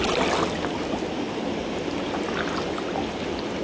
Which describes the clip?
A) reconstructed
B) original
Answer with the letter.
B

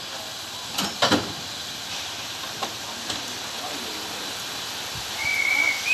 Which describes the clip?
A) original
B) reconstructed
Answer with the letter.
A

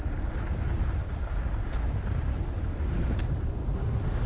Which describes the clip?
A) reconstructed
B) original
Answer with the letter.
B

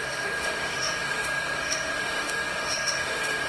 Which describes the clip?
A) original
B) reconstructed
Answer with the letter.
B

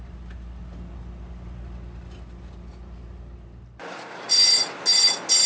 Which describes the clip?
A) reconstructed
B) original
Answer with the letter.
B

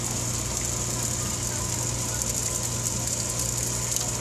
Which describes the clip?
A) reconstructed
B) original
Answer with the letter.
B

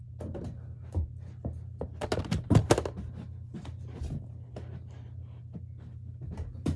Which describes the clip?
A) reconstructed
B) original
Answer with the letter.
B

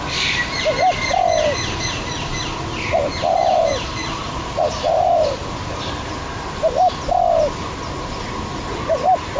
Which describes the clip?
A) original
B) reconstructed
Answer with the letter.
B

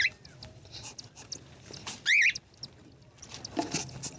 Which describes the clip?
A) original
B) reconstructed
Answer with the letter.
A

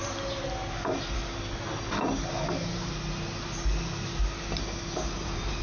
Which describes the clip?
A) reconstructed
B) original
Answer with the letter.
B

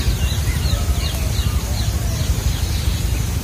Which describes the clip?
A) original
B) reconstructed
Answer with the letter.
A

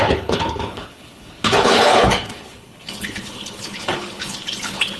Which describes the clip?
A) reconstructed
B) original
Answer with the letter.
A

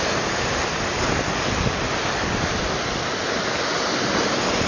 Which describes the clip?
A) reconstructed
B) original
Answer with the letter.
B